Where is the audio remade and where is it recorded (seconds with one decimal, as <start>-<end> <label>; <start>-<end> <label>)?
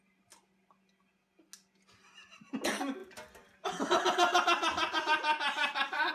0.0-6.1 recorded